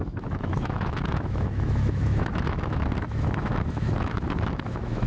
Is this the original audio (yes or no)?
no